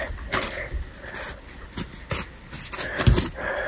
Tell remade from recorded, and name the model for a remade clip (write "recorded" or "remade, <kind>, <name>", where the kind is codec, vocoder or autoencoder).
recorded